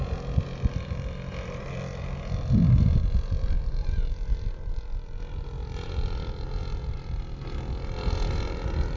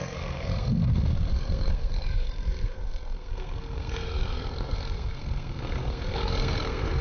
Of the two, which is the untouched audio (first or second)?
first